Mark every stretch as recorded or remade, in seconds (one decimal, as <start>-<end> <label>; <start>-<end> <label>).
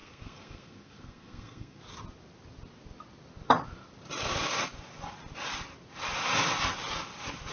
0.0-1.8 remade; 1.8-7.5 recorded